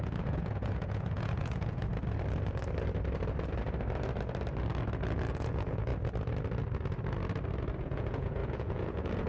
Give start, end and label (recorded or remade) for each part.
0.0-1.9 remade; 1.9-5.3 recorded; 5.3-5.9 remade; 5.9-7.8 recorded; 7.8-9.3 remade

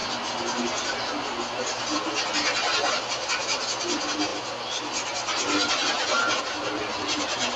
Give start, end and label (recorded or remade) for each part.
0.0-7.6 recorded

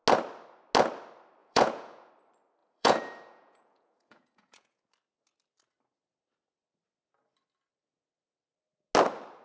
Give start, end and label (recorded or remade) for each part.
0.0-1.4 recorded; 1.4-2.1 remade; 2.1-2.6 recorded; 2.6-4.8 remade; 4.8-9.4 recorded

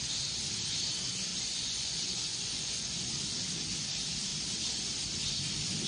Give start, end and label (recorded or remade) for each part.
0.0-1.3 recorded; 1.3-3.1 remade; 3.1-5.9 recorded

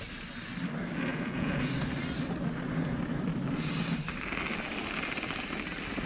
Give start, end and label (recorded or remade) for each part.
0.0-1.1 recorded; 1.1-1.7 remade; 1.7-6.1 recorded

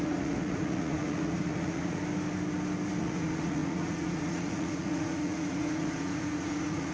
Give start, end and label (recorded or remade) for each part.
0.0-2.0 remade; 2.0-3.0 recorded; 3.0-6.9 remade